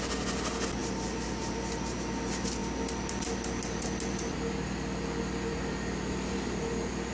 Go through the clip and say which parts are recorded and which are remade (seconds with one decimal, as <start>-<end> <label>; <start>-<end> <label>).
0.0-7.1 recorded